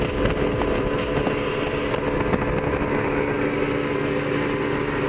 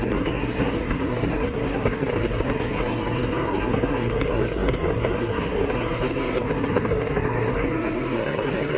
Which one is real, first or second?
first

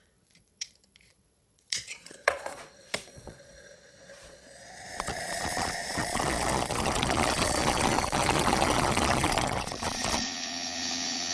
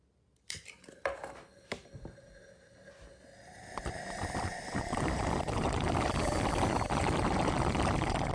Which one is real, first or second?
second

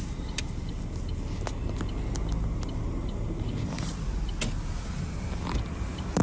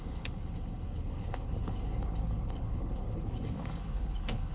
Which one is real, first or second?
first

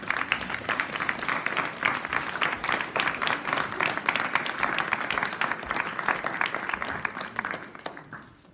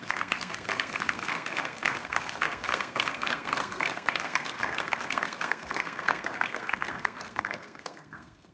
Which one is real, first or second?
first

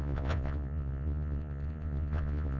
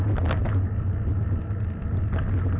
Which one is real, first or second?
second